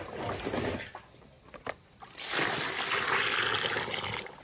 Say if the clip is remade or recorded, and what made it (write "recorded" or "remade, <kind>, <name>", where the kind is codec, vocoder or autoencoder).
recorded